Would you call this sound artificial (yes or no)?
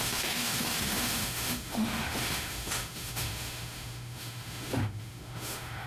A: yes